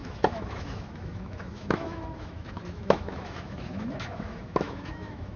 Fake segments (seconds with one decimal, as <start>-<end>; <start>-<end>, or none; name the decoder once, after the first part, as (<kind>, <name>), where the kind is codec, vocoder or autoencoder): 0.0-5.4 (autoencoder, DAC-VAE)